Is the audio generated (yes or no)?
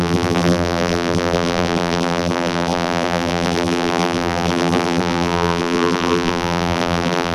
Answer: yes